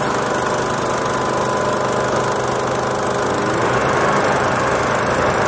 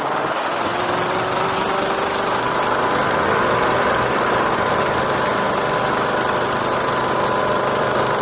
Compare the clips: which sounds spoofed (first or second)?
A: second